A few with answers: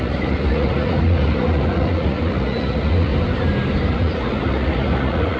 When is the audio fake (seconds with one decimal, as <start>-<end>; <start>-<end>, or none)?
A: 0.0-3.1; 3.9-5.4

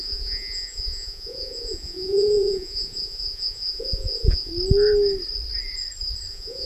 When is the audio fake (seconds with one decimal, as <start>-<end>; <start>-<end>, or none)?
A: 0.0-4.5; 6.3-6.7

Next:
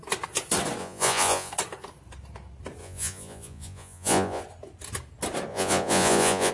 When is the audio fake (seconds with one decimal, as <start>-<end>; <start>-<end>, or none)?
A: 0.8-1.5; 2.8-4.4; 5.5-6.5

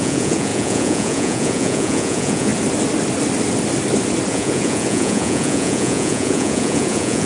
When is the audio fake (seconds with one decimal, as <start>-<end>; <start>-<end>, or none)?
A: 0.0-2.5; 4.3-7.3